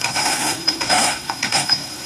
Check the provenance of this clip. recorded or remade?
remade